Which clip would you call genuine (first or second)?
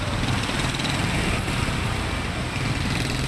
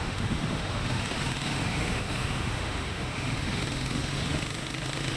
first